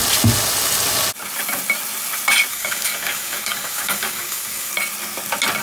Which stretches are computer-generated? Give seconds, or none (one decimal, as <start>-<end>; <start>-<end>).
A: 2.5-4.7

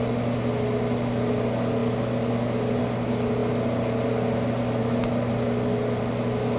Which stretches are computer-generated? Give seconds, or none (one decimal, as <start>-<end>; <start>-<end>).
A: none